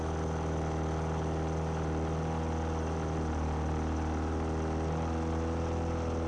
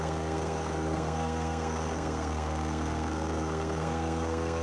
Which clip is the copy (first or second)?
second